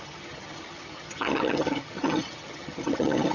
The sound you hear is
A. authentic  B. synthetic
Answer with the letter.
B